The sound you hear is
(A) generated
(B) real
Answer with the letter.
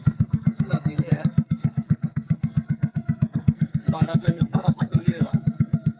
A